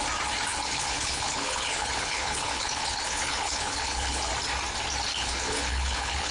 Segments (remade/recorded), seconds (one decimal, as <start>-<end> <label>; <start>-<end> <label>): 0.0-0.5 recorded; 0.5-4.3 remade; 4.3-5.1 recorded; 5.1-6.3 remade